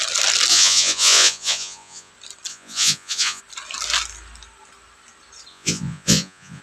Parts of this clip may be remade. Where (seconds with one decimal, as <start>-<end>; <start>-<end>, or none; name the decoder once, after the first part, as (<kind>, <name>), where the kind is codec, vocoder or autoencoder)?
0.5-2.1 (vocoder, Vocos); 2.5-3.4; 5.5-6.6